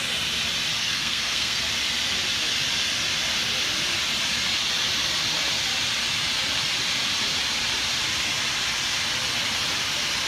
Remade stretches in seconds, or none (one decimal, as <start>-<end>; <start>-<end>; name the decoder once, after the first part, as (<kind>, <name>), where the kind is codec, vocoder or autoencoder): 0.8-1.6 (codec, SNAC)